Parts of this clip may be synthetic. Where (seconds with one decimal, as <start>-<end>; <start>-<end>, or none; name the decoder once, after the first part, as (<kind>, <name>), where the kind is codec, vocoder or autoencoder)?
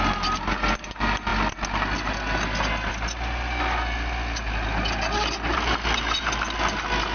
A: none